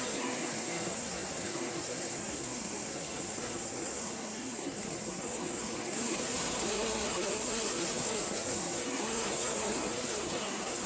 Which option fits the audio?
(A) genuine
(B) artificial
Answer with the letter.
B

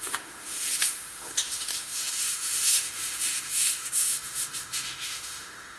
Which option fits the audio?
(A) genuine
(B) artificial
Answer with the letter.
B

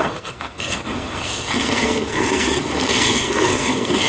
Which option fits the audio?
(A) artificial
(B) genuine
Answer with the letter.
A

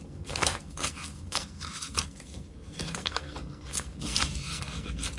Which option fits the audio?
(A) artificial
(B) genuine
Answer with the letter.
A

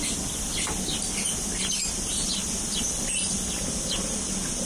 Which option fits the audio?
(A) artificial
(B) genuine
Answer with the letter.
B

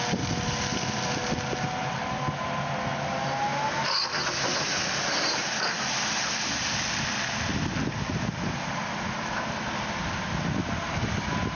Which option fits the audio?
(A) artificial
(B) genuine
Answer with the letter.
B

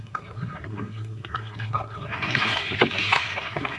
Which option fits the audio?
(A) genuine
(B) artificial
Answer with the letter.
B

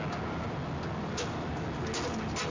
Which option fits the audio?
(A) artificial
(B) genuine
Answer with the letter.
B